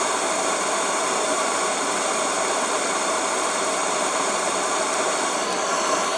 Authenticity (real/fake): fake